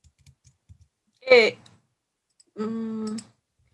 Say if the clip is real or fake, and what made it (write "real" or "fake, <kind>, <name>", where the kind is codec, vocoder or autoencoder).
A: real